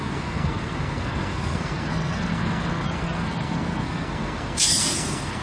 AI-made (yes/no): yes